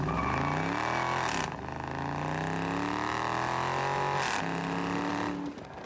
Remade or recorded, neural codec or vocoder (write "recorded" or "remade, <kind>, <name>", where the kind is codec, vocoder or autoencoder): recorded